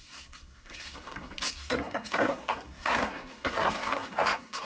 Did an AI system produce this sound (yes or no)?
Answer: yes